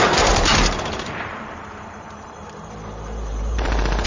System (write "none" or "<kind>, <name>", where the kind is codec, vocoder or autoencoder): vocoder, BigVGAN v2